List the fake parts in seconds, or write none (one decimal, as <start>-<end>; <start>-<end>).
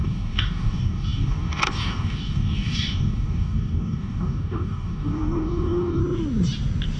0.0-6.0